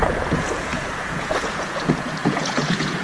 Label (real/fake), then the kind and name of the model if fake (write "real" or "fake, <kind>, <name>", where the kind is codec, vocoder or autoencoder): fake, vocoder, Vocos